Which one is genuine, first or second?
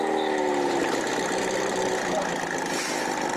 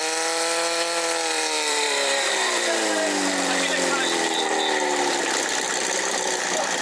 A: first